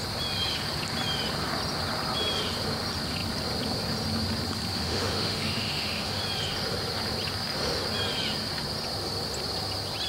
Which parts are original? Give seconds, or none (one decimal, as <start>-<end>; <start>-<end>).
0.0-4.7; 6.2-10.1